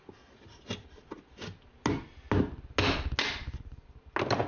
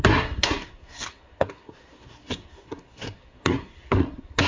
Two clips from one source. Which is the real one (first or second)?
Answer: first